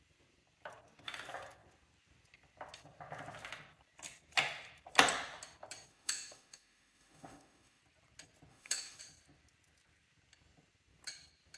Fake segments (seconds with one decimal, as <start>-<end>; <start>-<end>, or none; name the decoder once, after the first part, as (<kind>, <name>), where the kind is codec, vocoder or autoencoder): 5.9-7.8 (autoencoder, DAC-VAE); 8.5-9.0